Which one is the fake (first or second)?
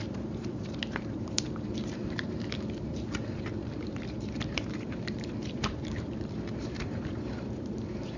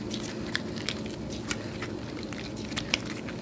first